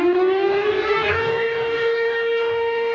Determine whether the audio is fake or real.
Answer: fake